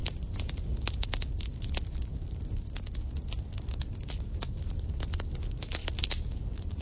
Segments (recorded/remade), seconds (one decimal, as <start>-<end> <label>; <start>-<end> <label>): 0.0-6.8 recorded